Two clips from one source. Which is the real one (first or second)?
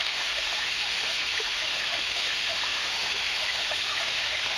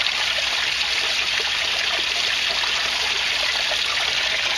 second